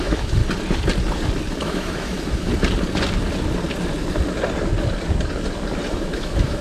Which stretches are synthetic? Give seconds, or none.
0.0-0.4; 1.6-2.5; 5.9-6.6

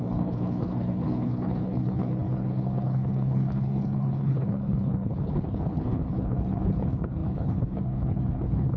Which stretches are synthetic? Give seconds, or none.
0.0-8.8

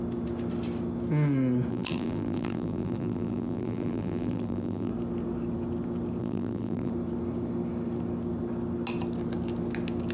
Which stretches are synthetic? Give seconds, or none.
1.7-4.9; 6.2-6.9

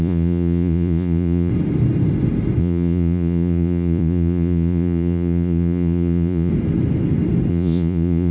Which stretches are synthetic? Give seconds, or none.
0.0-1.5; 2.6-6.5; 7.5-8.3

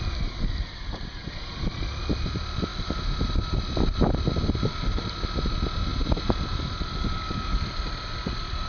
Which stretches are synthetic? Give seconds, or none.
none

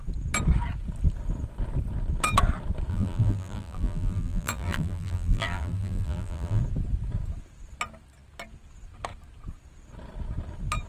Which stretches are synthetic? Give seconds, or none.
2.9-6.6